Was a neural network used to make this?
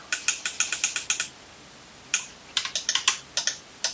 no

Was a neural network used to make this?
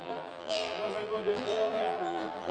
yes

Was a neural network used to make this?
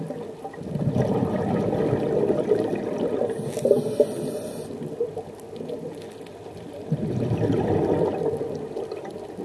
no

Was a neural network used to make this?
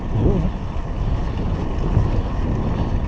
no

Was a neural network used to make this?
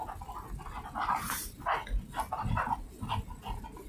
no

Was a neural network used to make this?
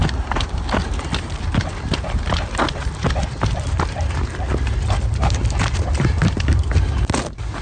no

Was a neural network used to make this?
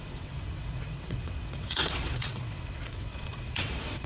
yes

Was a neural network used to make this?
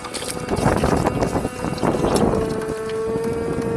no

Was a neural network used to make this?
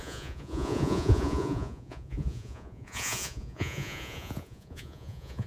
yes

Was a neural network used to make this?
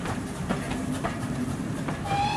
yes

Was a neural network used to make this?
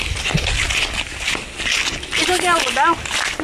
no